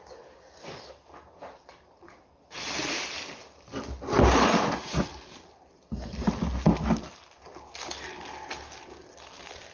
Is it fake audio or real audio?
real